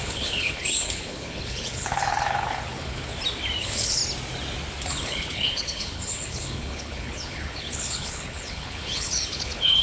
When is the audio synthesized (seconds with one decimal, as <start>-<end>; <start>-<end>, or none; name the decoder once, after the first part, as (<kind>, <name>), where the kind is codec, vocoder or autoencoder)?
0.0-3.1 (codec, HILCodec); 3.6-4.0; 4.9-9.8